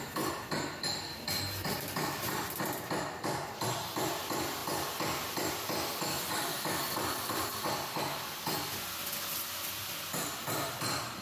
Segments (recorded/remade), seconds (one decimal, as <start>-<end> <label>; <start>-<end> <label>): 0.0-11.2 recorded